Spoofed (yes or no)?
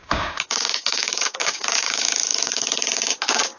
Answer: yes